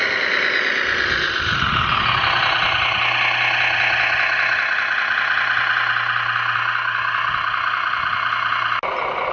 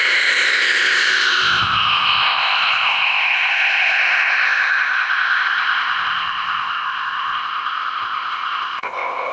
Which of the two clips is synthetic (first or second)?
second